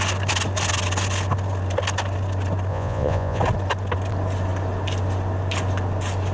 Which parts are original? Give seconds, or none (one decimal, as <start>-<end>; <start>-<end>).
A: 0.0-2.7; 3.4-6.3